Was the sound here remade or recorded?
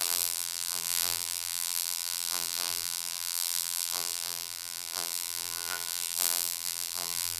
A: remade